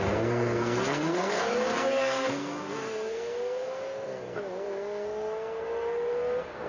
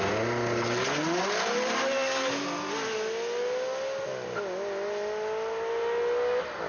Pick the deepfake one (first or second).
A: first